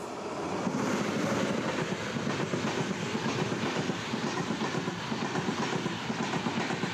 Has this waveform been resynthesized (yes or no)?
no